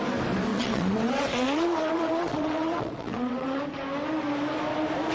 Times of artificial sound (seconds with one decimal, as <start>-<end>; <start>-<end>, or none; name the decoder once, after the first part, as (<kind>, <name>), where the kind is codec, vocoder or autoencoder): 0.5-3.6 (vocoder, WaveNeXt)